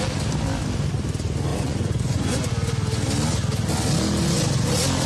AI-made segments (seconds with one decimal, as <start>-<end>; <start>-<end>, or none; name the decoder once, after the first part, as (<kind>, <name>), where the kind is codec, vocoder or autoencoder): 1.5-2.5 (vocoder, Vocos)